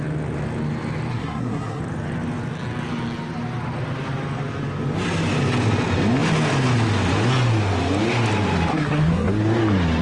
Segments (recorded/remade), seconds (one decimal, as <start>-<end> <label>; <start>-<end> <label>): 0.0-1.1 recorded; 1.1-1.8 remade; 1.8-8.7 recorded; 8.7-9.4 remade; 9.4-10.0 recorded